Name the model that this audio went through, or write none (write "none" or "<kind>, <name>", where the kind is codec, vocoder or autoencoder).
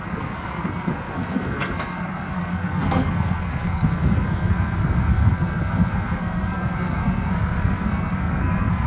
codec, SNAC